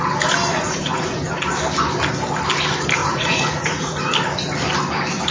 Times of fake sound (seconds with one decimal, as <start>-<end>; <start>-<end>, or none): 0.5-1.4; 3.0-4.0